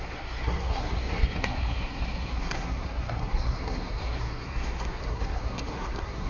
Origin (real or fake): fake